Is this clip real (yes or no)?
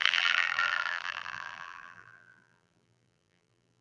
no